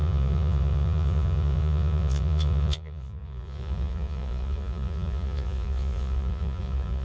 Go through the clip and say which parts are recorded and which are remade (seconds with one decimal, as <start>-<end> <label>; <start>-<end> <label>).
0.0-7.0 remade